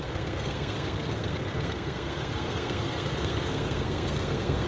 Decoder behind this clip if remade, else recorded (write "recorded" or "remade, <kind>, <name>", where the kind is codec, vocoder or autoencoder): remade, codec, SNAC